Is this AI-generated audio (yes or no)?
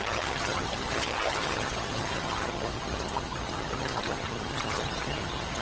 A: yes